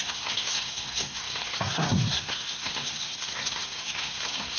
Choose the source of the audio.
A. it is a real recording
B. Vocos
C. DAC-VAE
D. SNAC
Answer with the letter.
D